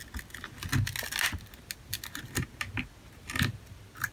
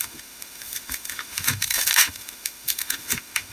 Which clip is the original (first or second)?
first